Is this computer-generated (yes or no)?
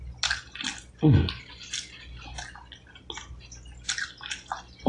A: no